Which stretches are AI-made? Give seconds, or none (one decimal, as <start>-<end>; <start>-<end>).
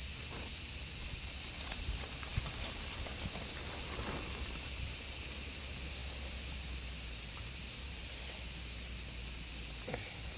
none